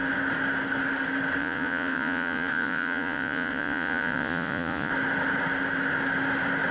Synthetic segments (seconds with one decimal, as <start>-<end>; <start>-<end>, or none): 1.4-4.9